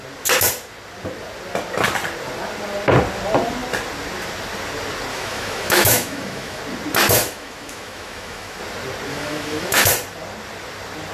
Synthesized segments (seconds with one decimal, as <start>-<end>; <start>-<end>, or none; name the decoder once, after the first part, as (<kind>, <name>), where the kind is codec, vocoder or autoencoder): 5.1-6.6 (autoencoder, DAC-VAE); 7.2-8.6; 9.1-9.9